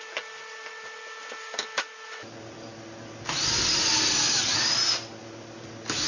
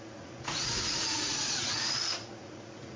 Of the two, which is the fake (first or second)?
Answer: second